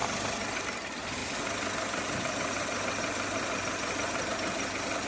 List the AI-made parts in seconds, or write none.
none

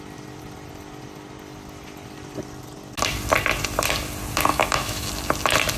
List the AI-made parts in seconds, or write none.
4.5-5.1

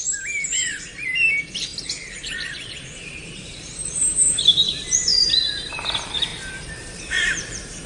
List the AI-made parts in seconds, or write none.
0.0-5.1; 5.7-7.9

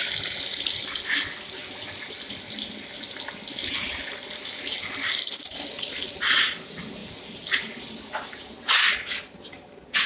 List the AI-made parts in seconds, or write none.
none

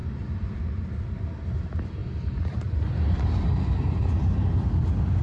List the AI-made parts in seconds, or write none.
none

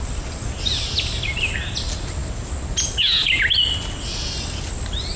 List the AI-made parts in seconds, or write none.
none

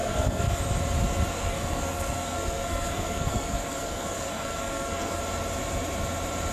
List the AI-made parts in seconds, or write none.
0.0-0.6; 1.3-5.2